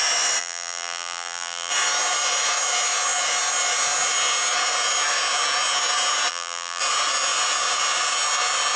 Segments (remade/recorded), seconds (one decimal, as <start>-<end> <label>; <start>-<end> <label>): 0.0-0.4 recorded; 0.4-1.7 remade; 1.7-6.3 recorded; 6.3-6.8 remade; 6.8-8.8 recorded